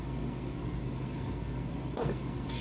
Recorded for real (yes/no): no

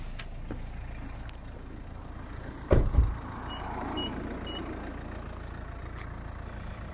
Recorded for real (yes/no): yes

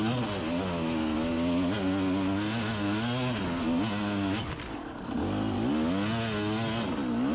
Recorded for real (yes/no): yes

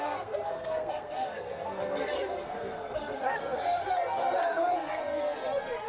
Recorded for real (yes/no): no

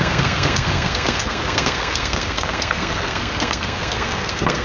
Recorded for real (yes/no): no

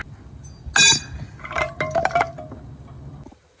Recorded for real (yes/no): yes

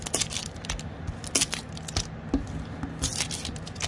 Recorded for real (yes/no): yes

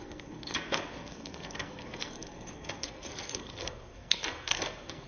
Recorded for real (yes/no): no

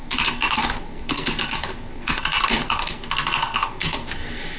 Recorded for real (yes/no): no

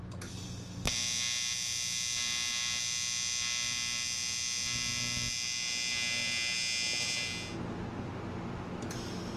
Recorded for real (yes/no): yes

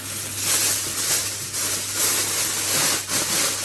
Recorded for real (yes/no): yes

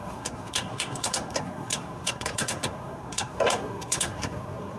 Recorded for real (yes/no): no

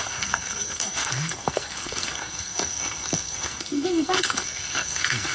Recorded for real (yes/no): no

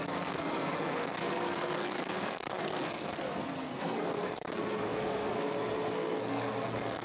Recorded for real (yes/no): no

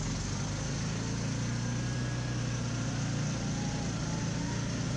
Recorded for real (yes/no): yes